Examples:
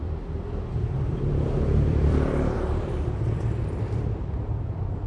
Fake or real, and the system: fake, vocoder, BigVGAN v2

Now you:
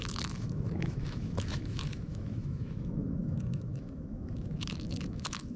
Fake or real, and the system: fake, autoencoder, DAC-VAE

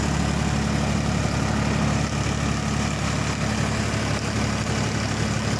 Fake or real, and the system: real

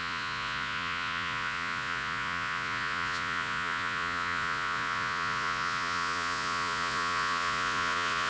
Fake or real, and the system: fake, vocoder, Vocos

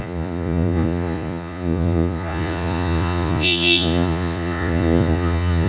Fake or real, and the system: fake, vocoder, Vocos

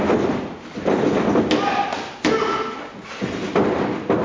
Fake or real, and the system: real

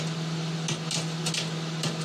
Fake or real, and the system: real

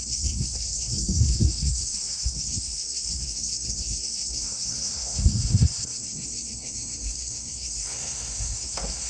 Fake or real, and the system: fake, codec, SNAC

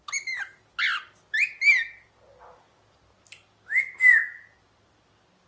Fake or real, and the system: real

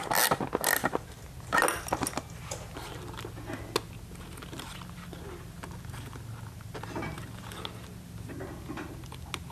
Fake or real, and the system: real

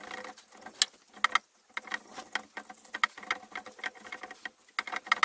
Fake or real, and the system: real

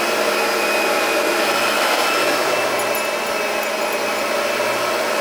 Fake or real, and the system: real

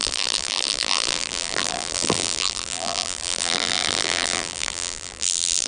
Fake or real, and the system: fake, vocoder, BigVGAN v2